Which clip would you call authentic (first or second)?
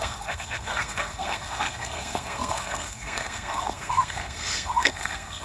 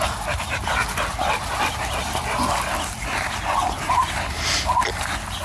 second